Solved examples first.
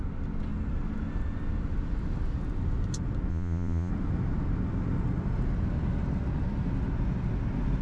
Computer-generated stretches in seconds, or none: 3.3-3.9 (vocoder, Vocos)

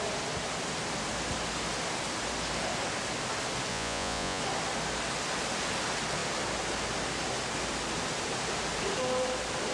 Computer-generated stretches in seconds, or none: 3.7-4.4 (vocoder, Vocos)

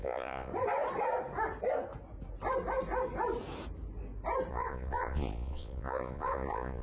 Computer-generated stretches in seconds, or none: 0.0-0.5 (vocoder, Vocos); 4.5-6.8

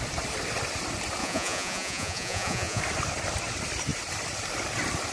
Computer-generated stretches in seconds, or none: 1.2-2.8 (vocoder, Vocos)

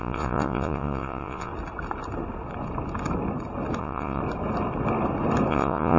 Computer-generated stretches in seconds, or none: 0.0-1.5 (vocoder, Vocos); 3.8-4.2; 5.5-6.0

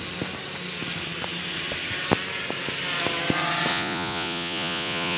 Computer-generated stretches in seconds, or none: 3.7-5.2 (vocoder, Vocos)